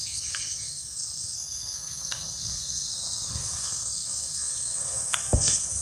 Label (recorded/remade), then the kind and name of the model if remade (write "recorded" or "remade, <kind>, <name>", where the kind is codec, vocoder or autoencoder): remade, codec, SNAC